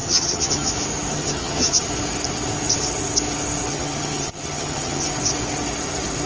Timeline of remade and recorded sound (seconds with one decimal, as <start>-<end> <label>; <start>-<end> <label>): 0.0-0.7 remade; 0.7-1.1 recorded; 1.1-1.9 remade; 1.9-3.7 recorded; 3.7-5.1 remade; 5.1-6.3 recorded